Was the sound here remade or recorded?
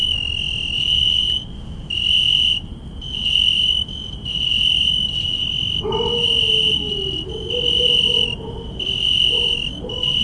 recorded